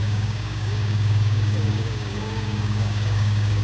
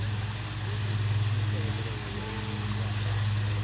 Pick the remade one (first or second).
first